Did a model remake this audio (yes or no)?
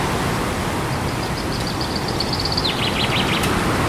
no